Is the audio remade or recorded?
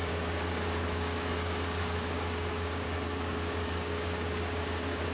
remade